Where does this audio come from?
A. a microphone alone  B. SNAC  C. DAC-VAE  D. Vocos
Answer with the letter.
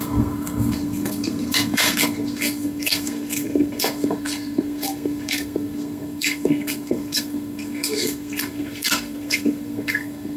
B